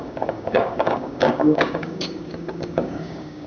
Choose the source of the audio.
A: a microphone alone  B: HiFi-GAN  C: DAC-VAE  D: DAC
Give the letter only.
D